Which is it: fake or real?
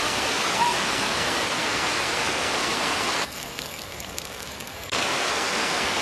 fake